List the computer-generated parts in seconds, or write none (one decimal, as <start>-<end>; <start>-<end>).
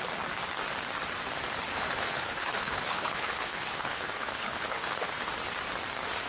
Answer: 1.7-5.3